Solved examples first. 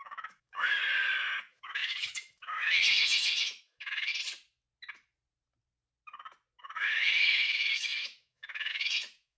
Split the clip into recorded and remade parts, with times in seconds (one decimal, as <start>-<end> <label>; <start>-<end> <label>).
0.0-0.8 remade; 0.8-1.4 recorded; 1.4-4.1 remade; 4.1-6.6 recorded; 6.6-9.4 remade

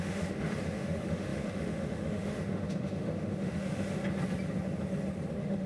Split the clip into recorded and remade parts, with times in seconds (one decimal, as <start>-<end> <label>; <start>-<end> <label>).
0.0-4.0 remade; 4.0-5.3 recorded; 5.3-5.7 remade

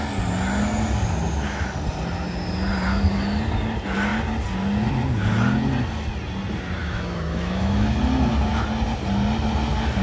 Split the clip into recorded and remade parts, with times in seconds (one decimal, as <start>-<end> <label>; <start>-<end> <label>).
0.0-6.8 recorded; 6.8-8.0 remade; 8.0-10.0 recorded

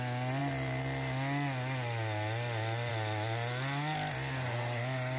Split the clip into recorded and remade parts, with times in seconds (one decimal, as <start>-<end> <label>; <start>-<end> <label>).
0.0-5.2 recorded

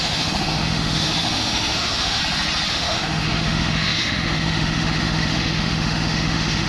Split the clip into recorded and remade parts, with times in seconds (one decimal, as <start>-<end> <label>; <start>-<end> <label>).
0.0-2.2 remade; 2.2-2.7 recorded; 2.7-6.7 remade